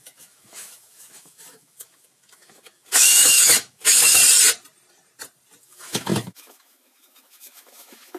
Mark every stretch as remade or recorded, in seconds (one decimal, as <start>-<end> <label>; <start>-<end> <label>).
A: 0.0-4.2 remade; 4.2-5.6 recorded; 5.6-8.2 remade